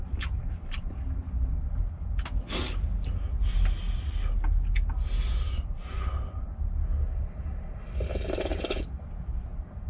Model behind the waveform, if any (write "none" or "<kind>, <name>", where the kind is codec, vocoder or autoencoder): none